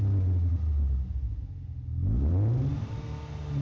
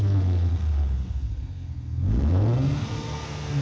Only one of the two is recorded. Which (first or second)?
first